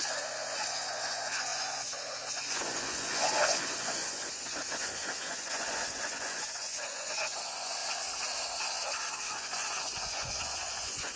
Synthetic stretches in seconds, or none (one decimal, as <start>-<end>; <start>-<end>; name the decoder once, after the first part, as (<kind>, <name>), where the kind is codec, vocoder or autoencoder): 0.0-7.8 (vocoder, Vocos); 9.3-11.2